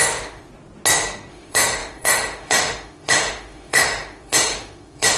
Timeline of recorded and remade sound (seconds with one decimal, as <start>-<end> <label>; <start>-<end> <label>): 0.0-0.5 remade; 0.5-1.3 recorded; 1.3-5.2 remade